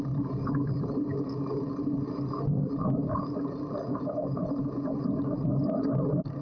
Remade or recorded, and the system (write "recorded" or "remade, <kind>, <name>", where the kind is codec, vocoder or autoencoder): recorded